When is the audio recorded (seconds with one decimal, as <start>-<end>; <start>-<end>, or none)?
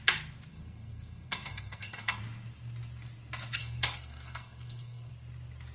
0.0-0.5; 2.2-3.6; 5.1-5.7